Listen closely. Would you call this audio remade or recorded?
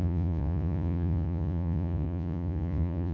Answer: remade